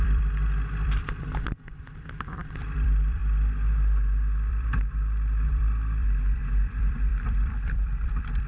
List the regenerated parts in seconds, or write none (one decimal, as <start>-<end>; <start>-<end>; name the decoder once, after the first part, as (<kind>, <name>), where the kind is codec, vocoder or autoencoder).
0.0-3.2 (vocoder, BigVGAN v2); 4.5-8.5

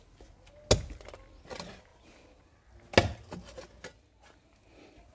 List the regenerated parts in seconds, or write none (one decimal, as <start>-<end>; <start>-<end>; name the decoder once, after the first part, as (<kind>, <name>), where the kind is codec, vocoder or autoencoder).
none